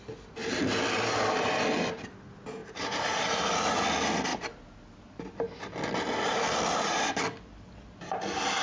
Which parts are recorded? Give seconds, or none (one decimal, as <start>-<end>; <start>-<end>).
0.0-2.6; 3.4-8.6